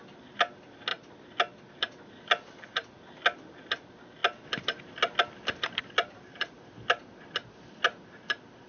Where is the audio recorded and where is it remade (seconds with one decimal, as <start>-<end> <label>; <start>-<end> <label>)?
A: 0.0-8.7 recorded